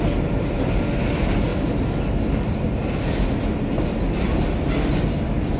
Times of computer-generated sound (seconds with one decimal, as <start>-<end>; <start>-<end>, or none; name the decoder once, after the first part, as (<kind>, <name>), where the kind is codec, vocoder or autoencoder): none